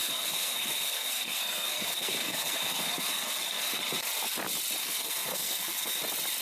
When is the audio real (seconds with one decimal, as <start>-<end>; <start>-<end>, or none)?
3.8-4.8; 6.0-6.4